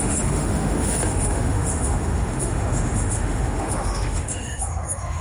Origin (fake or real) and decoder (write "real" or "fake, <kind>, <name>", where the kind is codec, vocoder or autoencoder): fake, autoencoder, DAC-VAE